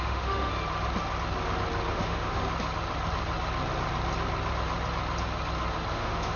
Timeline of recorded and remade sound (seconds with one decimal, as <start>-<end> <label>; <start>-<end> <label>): 0.0-0.5 remade; 0.5-1.9 recorded; 1.9-2.4 remade; 2.4-5.9 recorded; 5.9-6.4 remade